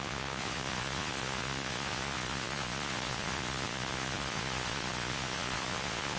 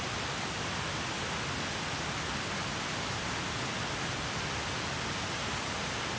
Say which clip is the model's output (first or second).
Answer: first